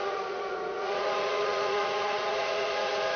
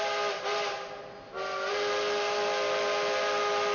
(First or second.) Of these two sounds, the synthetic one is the first